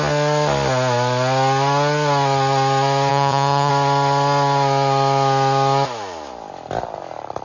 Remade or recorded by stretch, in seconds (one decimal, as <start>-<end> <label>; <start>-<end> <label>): 0.0-3.1 recorded; 3.1-3.7 remade; 3.7-7.4 recorded